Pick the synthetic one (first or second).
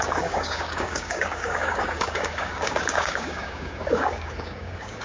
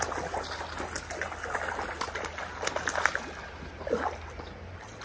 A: first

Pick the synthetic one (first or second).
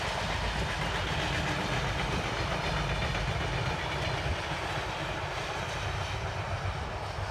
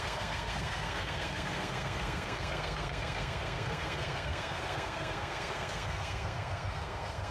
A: second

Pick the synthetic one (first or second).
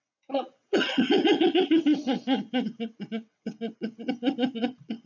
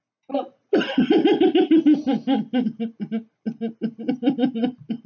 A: first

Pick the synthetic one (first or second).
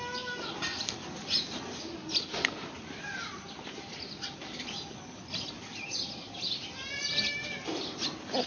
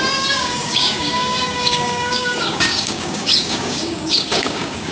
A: second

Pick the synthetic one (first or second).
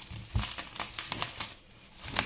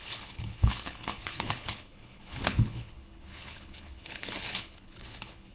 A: second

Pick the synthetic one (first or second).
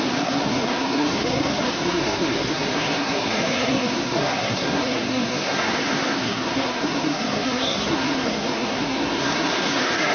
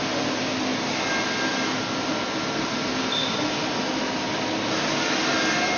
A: first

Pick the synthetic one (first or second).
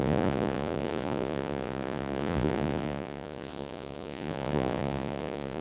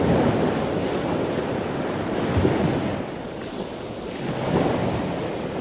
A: first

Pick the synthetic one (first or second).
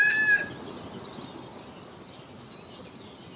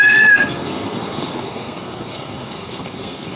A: second